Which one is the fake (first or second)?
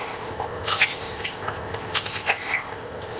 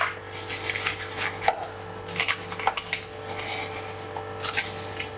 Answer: first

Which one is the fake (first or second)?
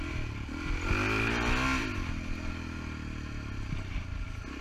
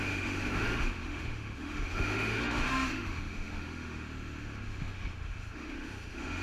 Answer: second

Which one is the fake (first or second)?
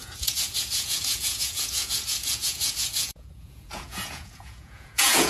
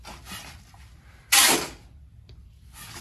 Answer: first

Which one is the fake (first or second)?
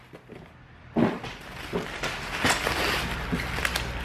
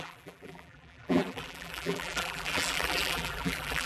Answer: second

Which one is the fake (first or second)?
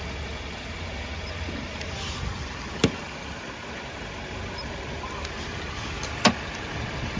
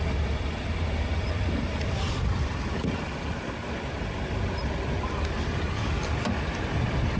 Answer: second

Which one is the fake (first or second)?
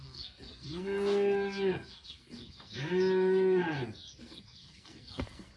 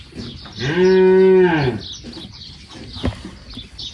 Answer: first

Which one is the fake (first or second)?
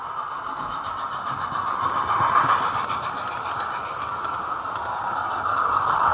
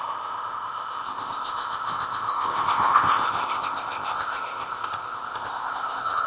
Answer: second